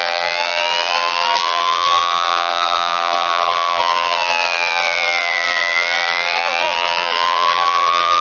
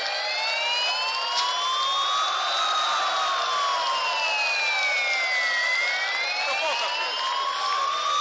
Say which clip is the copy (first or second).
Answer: first